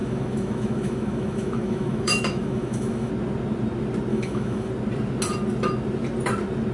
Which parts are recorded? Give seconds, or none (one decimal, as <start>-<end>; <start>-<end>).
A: 3.1-4.1; 4.7-6.7